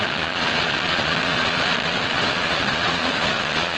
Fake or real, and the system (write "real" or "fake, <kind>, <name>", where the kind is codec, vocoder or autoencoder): fake, vocoder, Vocos